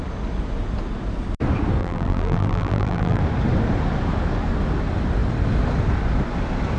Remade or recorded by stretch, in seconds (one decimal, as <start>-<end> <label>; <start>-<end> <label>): 0.0-1.8 recorded; 1.8-3.2 remade; 3.2-6.8 recorded